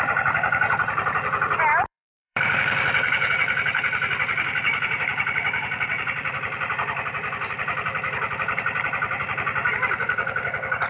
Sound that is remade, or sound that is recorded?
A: remade